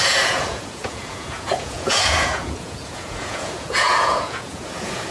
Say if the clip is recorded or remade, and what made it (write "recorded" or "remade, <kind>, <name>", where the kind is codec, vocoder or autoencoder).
remade, vocoder, Vocos